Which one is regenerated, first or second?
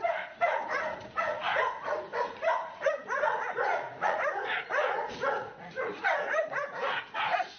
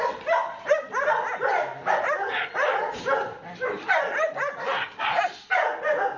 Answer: first